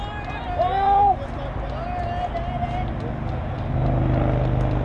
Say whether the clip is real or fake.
real